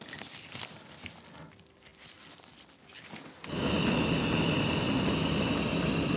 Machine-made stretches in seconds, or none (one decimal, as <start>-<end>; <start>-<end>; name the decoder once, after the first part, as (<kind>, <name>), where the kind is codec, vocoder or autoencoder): none